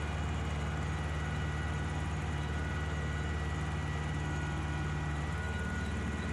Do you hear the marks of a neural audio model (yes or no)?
no